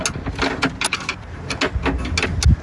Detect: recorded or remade recorded